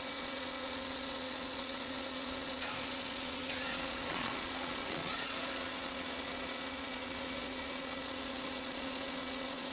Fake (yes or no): yes